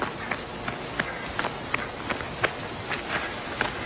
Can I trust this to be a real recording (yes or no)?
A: yes